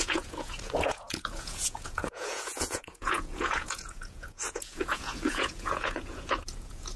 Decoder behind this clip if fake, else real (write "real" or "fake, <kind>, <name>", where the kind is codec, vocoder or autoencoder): fake, vocoder, Vocos